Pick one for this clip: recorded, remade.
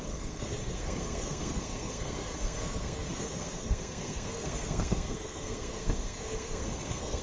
remade